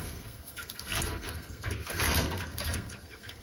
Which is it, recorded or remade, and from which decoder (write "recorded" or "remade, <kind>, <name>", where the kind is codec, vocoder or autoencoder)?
remade, codec, SNAC